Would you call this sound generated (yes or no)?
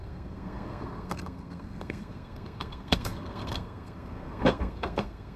yes